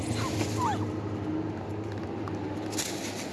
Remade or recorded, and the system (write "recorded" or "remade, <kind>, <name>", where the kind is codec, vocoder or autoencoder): recorded